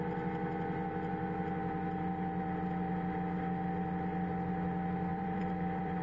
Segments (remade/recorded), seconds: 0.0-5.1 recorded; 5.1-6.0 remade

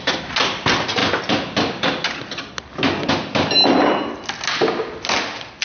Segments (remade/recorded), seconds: 0.0-5.6 recorded

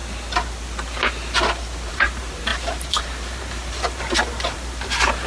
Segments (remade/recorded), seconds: 0.0-1.9 recorded; 1.9-5.3 remade

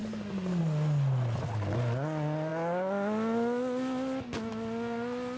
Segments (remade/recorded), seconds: 0.0-5.4 recorded

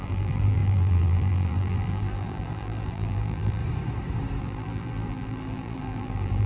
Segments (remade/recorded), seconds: 0.0-3.6 remade; 3.6-4.4 recorded; 4.4-6.5 remade

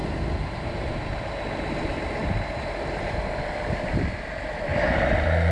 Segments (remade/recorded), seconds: 0.0-5.5 remade